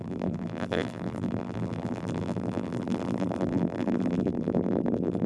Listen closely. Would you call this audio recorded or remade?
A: remade